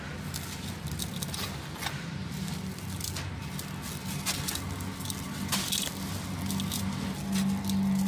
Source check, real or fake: real